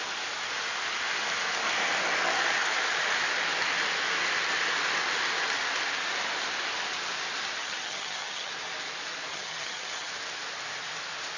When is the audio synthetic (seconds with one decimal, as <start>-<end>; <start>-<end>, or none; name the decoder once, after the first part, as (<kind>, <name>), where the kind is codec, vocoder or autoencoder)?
7.6-8.5 (vocoder, HiFi-GAN); 9.3-10.1

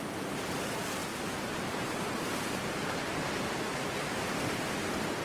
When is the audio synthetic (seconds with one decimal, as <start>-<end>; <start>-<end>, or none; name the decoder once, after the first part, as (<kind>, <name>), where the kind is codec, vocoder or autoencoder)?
none

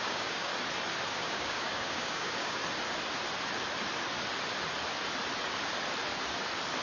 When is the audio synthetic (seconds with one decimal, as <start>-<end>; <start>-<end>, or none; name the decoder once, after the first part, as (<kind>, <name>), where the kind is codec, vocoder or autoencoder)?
0.0-0.5 (codec, DAC); 1.1-2.6

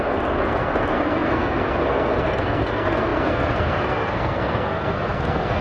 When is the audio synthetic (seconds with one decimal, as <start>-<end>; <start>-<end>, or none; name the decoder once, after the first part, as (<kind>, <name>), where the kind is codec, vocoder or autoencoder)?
0.0-5.6 (codec, SNAC)

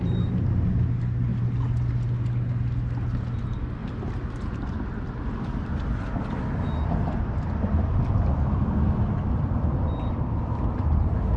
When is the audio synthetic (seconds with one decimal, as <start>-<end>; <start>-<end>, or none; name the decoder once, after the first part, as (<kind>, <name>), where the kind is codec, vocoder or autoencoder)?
none

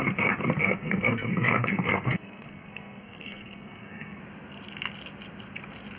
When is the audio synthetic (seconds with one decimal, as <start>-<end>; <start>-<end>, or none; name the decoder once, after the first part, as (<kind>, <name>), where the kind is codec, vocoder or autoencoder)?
0.6-4.2 (codec, SNAC)

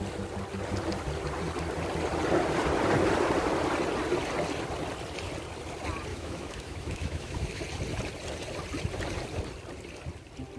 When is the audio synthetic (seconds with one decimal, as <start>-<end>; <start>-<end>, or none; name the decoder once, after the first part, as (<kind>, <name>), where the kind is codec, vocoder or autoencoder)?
6.1-7.6 (autoencoder, DAC-VAE)